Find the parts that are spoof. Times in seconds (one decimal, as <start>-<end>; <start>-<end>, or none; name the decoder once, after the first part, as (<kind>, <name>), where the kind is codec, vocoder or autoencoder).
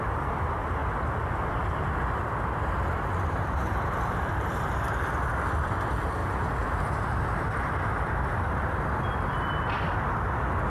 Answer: 0.8-5.1 (vocoder, BigVGAN v2); 6.2-7.7